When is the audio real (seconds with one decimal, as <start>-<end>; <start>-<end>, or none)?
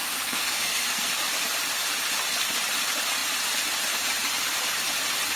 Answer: 1.1-5.4